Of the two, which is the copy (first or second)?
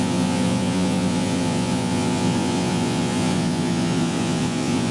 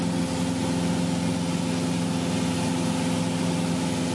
first